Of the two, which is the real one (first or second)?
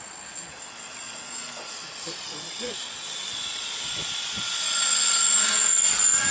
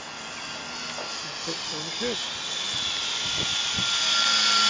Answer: second